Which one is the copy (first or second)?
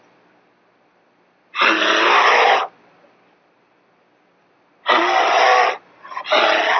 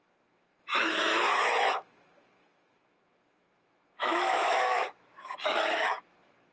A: second